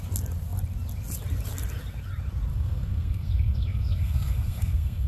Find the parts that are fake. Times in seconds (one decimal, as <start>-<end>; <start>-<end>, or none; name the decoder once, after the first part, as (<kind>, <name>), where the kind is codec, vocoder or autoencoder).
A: 2.5-5.1 (codec, SNAC)